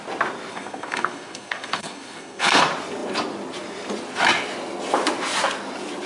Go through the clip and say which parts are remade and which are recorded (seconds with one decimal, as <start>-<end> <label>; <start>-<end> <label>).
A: 0.0-0.5 recorded; 0.5-2.6 remade; 2.6-6.1 recorded